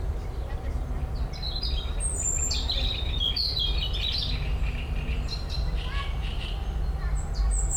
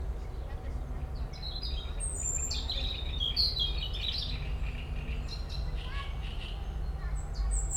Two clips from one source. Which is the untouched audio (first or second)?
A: second